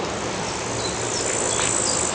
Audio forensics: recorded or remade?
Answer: recorded